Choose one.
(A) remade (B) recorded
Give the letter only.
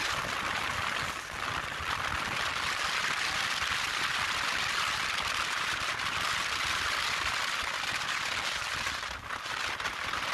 B